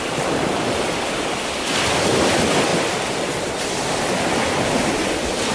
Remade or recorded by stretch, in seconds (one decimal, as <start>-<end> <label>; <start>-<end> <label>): 0.0-5.5 remade